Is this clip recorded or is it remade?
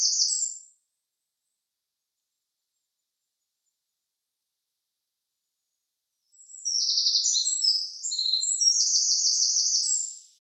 recorded